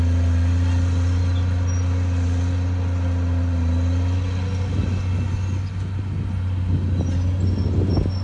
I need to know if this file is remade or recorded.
recorded